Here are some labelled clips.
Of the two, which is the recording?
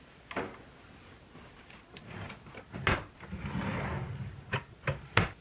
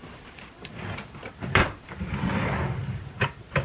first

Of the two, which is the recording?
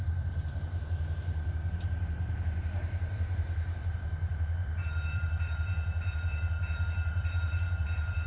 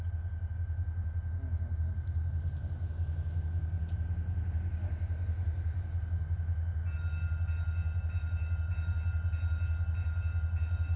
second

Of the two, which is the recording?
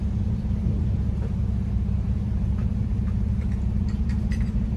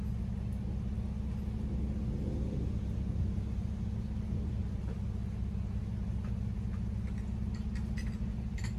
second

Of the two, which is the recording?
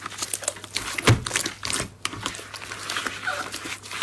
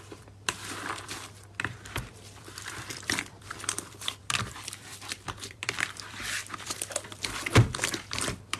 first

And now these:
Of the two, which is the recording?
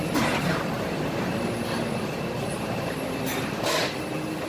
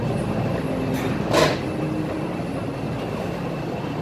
second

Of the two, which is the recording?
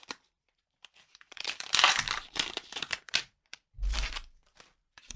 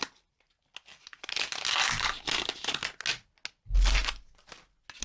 second